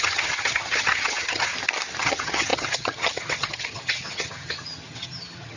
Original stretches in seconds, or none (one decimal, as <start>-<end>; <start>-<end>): 1.5-2.0